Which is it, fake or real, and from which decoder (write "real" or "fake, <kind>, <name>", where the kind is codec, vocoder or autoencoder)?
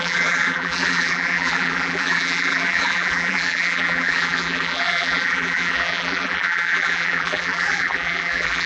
fake, vocoder, BigVGAN v2